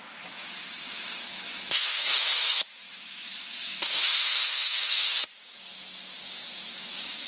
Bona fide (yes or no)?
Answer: no